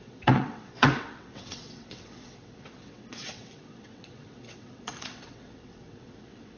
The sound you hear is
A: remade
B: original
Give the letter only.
A